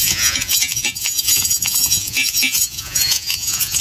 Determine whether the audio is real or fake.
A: fake